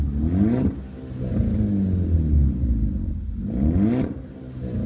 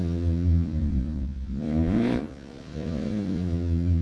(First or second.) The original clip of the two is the first